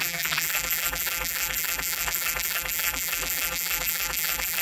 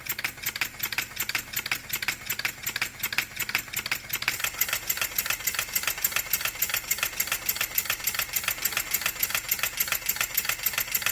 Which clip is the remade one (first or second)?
first